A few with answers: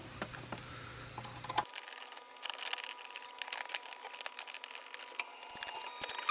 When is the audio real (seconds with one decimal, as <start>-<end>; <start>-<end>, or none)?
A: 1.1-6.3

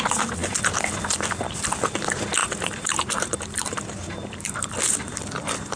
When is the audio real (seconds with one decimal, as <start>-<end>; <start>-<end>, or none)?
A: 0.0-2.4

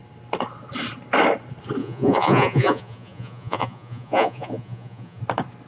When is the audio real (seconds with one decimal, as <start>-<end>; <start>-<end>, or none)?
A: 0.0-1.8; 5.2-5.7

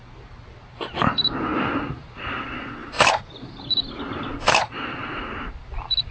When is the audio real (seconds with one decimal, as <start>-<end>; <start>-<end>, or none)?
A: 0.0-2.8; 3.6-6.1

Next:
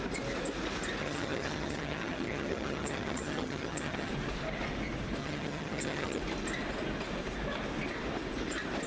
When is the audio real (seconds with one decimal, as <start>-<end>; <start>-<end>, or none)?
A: 0.0-1.0; 4.1-5.2; 6.2-8.9

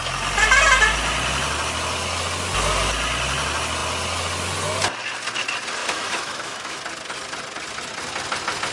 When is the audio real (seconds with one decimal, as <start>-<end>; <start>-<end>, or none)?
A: 0.0-5.8; 6.8-8.7